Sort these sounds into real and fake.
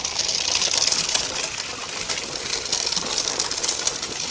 real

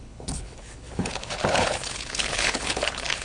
fake